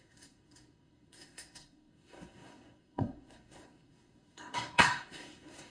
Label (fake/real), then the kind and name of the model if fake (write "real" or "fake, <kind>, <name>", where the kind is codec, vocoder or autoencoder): fake, codec, SNAC